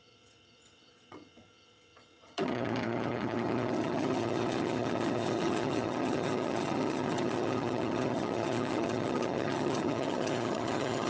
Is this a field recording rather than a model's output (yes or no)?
no